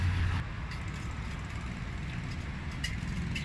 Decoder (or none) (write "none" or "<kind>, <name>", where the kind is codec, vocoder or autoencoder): none